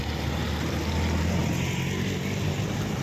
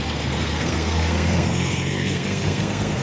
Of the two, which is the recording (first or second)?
first